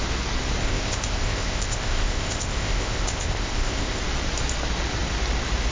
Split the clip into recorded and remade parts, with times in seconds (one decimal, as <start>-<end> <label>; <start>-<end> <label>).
0.0-0.6 recorded; 0.6-4.0 remade; 4.0-5.7 recorded